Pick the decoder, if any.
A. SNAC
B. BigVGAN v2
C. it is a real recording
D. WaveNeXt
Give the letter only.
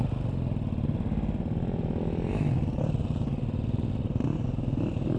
C